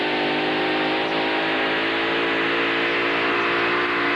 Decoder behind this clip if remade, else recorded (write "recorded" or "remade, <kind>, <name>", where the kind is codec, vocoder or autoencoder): recorded